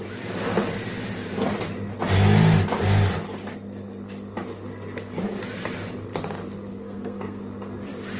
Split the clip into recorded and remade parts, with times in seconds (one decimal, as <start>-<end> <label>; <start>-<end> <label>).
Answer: 0.0-6.7 recorded; 6.7-7.4 remade; 7.4-8.2 recorded